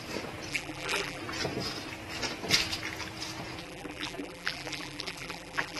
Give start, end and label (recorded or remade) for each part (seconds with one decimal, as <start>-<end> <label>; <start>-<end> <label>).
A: 0.0-0.5 recorded; 0.5-1.2 remade; 1.2-3.6 recorded; 3.6-5.8 remade

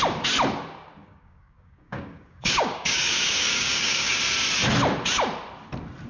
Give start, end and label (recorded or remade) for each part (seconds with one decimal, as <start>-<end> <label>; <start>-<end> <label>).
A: 0.0-1.0 recorded; 1.0-4.2 remade; 4.2-6.1 recorded